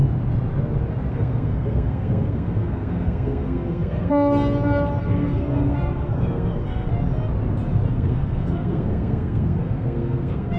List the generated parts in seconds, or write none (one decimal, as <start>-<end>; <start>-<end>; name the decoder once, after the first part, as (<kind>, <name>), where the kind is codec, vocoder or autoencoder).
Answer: 1.1-4.1 (codec, SNAC); 5.0-6.9; 7.9-10.6